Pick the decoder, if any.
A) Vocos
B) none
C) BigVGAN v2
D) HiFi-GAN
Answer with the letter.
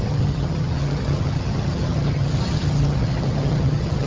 D